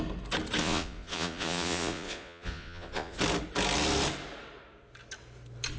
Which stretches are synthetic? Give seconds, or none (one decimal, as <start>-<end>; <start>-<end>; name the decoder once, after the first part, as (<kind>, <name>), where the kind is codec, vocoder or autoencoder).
0.6-3.2 (vocoder, Vocos)